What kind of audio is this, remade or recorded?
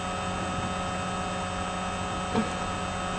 recorded